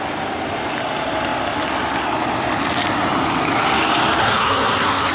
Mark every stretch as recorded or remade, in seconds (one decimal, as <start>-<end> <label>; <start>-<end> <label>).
0.0-4.2 recorded; 4.2-5.1 remade